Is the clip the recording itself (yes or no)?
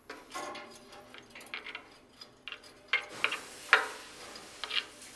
yes